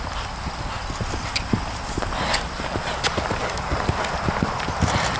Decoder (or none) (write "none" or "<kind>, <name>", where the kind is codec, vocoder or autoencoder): none